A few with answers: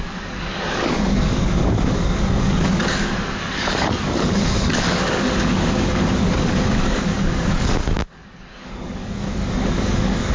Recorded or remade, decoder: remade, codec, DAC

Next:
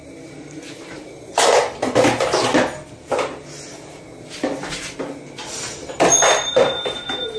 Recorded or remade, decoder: recorded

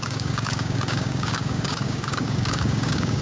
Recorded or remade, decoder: remade, codec, DAC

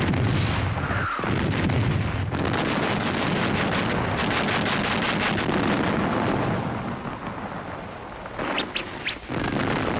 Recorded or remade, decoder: recorded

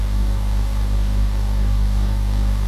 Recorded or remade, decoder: remade, codec, DAC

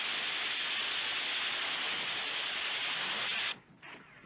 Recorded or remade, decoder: recorded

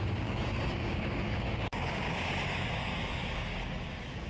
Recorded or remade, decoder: remade, codec, DAC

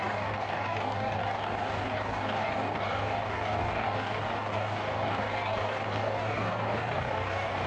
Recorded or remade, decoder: remade, codec, DAC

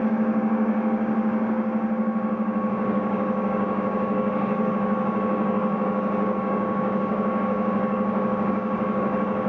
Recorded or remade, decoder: remade, codec, DAC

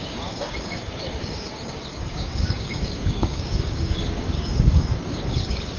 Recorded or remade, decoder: remade, codec, DAC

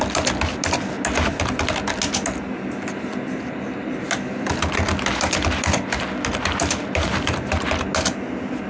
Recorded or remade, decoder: recorded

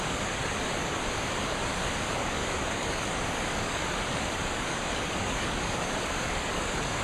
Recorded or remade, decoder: remade, codec, DAC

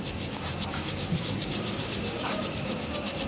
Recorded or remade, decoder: remade, codec, DAC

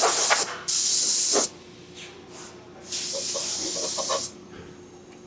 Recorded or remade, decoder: recorded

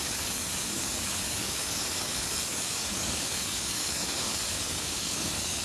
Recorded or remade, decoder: remade, codec, DAC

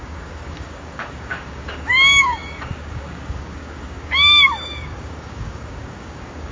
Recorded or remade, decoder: remade, codec, DAC